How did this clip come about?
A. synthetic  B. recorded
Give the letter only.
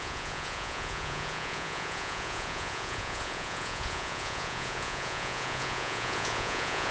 A